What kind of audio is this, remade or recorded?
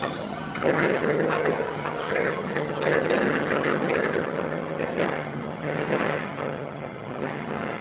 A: remade